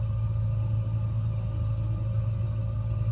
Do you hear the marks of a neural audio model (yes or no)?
no